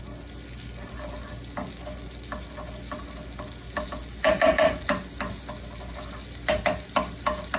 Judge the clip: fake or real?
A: real